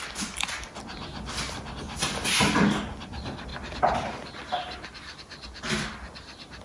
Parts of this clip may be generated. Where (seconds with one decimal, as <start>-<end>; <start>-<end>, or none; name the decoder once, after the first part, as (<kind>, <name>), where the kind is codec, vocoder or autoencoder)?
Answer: none